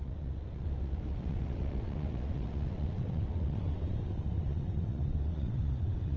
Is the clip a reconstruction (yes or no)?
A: yes